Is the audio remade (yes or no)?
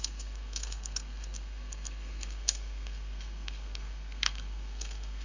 yes